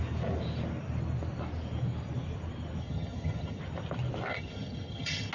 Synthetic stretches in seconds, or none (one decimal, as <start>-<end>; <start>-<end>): 2.8-3.6; 4.3-5.3